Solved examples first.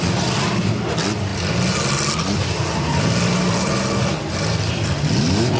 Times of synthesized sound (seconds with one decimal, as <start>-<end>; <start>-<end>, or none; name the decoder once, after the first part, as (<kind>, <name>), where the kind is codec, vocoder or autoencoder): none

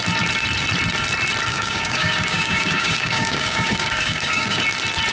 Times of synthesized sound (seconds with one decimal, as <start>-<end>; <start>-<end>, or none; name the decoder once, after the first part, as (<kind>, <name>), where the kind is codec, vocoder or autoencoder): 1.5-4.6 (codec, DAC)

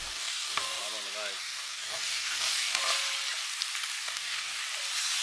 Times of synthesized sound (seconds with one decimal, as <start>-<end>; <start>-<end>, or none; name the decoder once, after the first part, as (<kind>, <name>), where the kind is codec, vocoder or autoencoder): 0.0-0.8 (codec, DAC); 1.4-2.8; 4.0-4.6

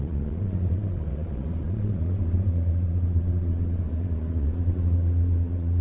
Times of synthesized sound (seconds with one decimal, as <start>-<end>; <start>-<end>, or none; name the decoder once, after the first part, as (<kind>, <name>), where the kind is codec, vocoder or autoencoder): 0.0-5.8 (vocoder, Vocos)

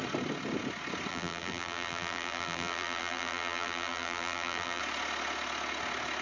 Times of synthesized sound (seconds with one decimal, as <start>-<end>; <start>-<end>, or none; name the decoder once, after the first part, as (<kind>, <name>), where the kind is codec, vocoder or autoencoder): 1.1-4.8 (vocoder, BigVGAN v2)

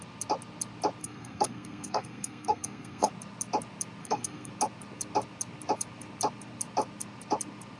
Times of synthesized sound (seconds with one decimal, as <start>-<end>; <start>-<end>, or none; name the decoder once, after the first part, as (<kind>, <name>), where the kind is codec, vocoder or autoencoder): 1.0-3.1 (codec, SNAC); 4.0-4.5